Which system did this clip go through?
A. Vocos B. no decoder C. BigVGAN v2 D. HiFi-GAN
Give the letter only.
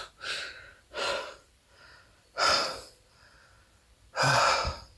C